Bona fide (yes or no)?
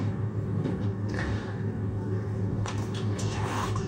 no